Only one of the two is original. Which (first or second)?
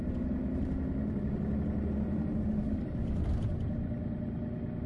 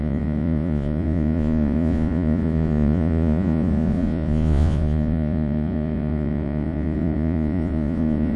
first